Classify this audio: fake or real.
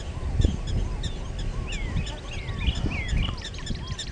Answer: real